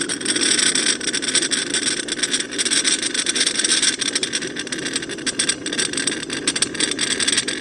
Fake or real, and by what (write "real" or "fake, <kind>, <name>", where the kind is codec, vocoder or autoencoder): real